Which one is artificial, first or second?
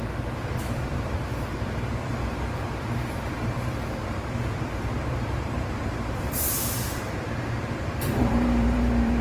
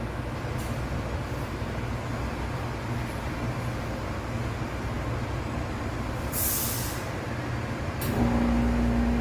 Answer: first